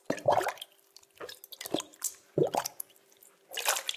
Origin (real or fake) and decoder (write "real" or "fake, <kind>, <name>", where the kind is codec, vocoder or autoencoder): real